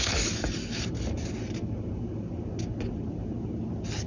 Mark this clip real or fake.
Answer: real